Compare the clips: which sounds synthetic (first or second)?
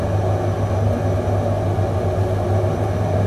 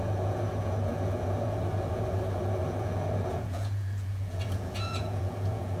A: second